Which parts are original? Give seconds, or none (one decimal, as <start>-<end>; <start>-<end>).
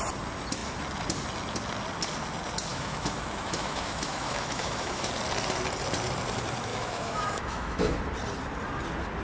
0.0-2.7; 5.1-6.7; 8.0-9.2